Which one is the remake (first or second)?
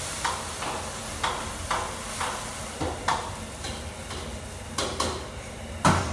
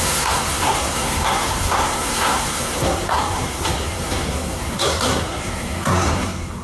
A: second